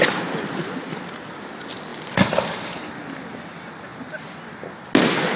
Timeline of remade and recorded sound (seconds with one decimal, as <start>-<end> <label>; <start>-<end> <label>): 0.0-5.4 recorded